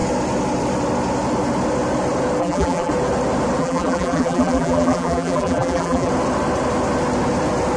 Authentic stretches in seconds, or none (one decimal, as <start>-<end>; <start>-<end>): 0.0-2.4; 2.9-3.6; 6.1-7.8